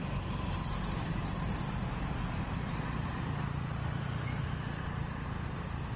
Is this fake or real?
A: fake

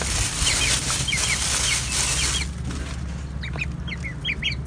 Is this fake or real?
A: real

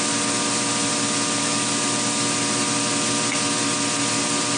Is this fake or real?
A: real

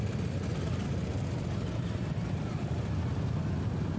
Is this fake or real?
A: real